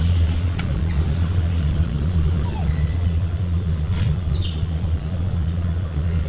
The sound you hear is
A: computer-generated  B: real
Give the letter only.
A